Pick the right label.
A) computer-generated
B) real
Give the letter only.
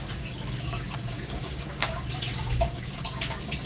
A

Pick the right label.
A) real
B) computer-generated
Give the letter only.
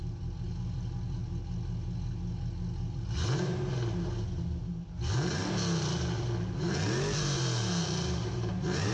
A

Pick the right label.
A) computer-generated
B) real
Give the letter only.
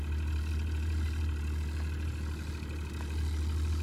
B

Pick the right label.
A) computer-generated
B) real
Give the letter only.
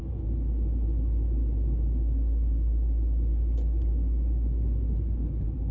B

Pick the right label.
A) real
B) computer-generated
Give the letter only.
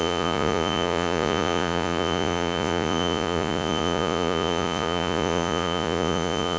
B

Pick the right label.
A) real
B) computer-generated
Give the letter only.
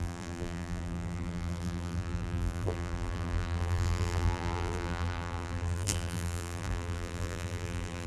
B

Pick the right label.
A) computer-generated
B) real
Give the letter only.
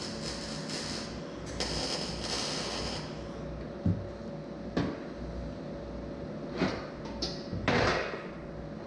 B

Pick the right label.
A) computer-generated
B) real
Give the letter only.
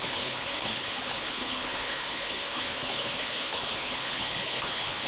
A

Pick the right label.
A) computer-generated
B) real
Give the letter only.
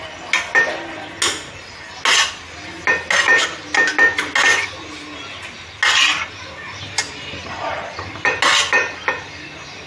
B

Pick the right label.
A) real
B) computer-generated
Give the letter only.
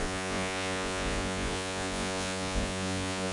B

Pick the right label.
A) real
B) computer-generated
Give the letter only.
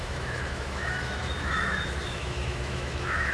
B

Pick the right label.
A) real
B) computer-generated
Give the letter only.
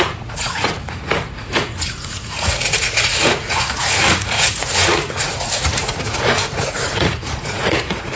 B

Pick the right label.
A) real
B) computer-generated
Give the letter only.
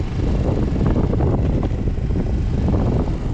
A